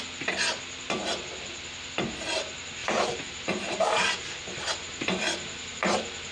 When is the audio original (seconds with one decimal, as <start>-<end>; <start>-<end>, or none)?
0.0-2.8